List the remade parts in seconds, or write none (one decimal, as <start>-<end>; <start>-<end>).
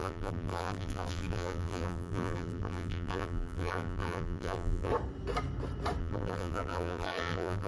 0.0-4.9; 6.0-7.7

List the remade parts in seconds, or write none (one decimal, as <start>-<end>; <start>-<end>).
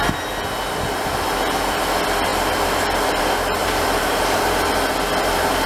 3.6-4.7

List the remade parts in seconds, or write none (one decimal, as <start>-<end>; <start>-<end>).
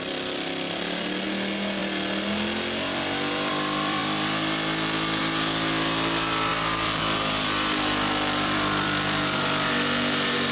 0.0-10.5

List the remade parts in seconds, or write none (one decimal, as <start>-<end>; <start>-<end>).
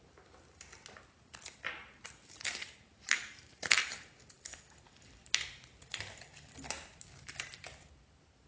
1.8-3.9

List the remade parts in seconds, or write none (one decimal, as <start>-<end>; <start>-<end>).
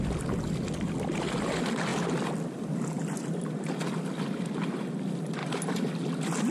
none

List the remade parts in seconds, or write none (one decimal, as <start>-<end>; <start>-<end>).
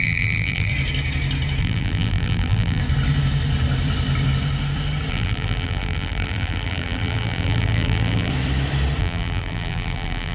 0.0-0.7; 1.6-2.8; 5.1-8.3; 9.0-10.3